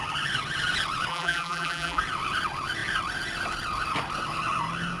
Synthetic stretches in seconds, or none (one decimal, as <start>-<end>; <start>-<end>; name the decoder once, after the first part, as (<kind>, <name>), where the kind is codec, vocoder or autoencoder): 1.1-2.0 (vocoder, BigVGAN v2)